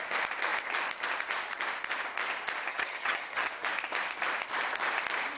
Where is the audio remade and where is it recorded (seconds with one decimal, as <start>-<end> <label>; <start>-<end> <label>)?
0.0-2.7 recorded; 2.7-3.5 remade; 3.5-5.4 recorded